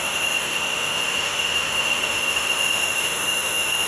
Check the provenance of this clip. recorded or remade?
remade